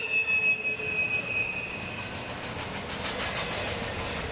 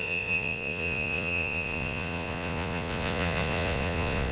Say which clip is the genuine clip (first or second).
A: first